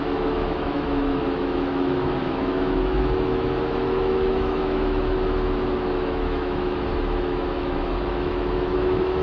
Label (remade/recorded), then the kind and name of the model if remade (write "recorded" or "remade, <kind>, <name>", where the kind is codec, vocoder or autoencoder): remade, autoencoder, DAC-VAE